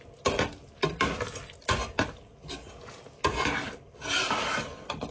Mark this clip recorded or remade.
recorded